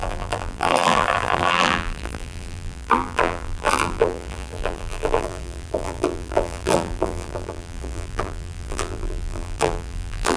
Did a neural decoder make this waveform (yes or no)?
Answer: yes